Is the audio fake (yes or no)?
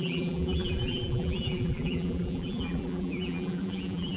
yes